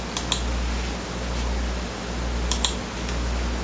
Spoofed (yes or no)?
no